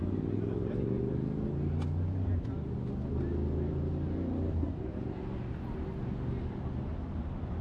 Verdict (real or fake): real